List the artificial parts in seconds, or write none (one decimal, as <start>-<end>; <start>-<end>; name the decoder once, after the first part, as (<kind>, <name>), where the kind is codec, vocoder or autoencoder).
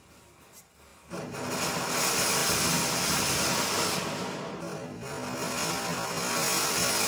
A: none